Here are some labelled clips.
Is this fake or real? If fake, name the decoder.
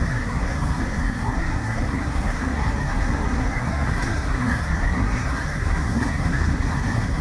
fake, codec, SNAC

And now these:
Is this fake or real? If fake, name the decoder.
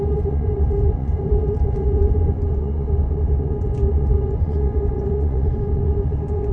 fake, vocoder, Vocos